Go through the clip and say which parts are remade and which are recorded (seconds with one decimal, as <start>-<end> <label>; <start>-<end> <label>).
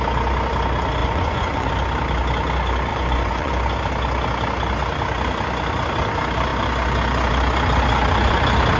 0.0-1.0 recorded; 1.0-1.7 remade; 1.7-2.9 recorded; 2.9-3.5 remade; 3.5-8.8 recorded